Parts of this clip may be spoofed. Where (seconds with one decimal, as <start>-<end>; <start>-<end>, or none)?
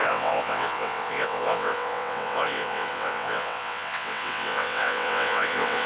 0.0-5.9